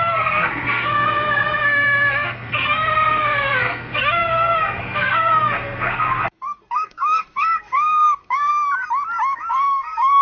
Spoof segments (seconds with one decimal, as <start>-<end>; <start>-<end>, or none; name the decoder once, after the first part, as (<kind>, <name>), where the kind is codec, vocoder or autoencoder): 0.0-8.5 (codec, SNAC); 9.5-10.2